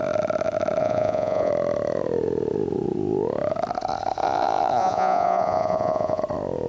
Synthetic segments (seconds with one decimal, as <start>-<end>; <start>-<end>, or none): 0.8-1.5; 4.8-6.2